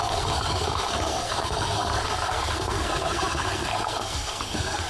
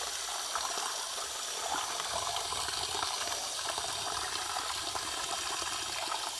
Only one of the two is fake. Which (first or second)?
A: first